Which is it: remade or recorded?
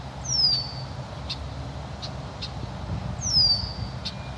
recorded